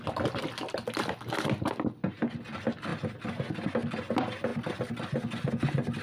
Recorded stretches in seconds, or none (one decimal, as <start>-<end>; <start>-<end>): 0.0-6.0